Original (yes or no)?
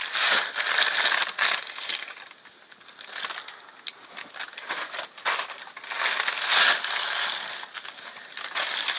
yes